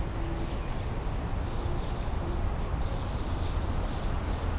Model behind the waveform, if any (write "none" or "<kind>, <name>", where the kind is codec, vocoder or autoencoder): none